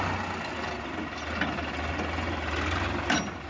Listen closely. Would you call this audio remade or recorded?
recorded